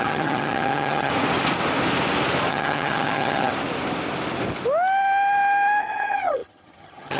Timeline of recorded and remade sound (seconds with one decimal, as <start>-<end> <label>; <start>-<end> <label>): 0.0-1.1 remade; 1.1-2.5 recorded; 2.5-3.5 remade; 3.5-5.8 recorded; 5.8-7.2 remade